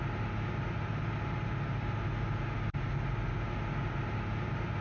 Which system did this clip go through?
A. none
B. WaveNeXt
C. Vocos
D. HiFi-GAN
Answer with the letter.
A